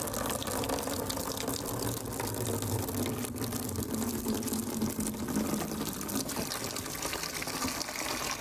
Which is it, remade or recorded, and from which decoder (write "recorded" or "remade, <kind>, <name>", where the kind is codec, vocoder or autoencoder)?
recorded